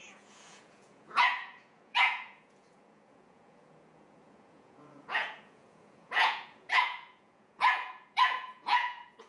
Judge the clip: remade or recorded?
remade